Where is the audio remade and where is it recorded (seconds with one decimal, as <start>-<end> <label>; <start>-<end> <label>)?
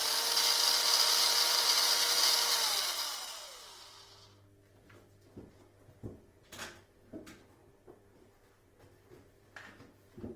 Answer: 0.0-10.4 recorded